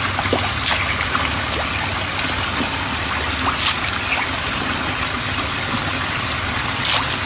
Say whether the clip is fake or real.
real